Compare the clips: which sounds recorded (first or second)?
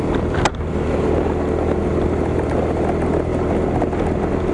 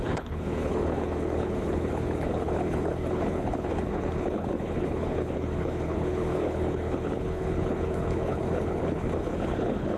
first